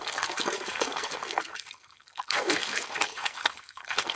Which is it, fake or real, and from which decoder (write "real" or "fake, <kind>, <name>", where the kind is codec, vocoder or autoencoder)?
fake, codec, SNAC